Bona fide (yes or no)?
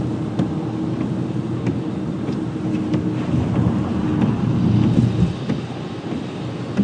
yes